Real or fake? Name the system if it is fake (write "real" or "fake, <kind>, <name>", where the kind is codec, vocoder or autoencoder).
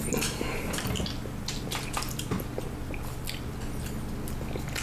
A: real